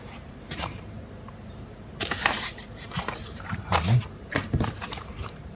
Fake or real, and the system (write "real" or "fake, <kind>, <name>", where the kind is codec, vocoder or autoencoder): fake, vocoder, BigVGAN v2